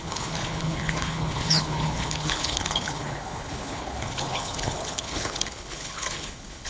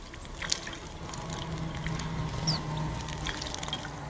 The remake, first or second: first